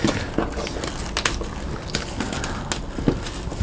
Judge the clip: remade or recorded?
recorded